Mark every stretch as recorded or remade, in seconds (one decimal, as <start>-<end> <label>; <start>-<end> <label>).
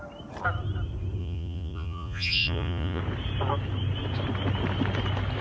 0.0-1.2 recorded; 1.2-3.0 remade; 3.0-5.4 recorded